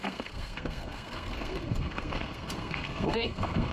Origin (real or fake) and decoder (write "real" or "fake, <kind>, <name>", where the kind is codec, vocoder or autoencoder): fake, codec, SNAC